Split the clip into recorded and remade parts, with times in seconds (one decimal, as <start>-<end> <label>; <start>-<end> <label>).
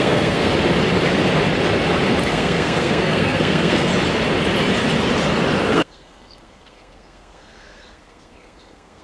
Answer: 0.0-0.5 remade; 0.5-2.3 recorded; 2.3-3.9 remade; 3.9-5.7 recorded; 5.7-9.0 remade